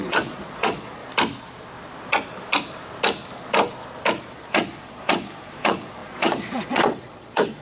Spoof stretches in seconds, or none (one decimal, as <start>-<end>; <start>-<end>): 0.0-1.0; 4.2-7.6